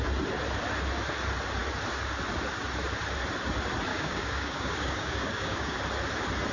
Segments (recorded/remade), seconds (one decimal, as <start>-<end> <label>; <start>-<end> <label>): 0.0-3.9 recorded; 3.9-5.8 remade; 5.8-6.5 recorded